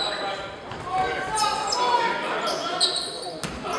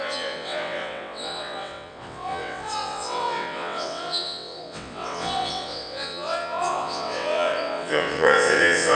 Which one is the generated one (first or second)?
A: second